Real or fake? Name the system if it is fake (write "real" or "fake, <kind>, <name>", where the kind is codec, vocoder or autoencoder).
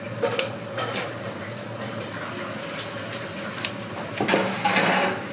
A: real